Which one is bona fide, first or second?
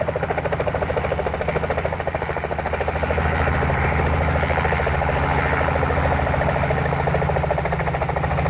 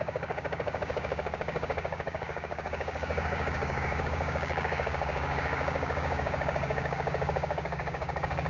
first